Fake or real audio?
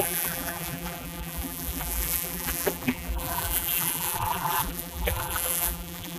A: fake